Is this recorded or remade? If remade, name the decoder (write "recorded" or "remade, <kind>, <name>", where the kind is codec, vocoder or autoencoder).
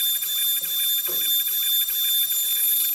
recorded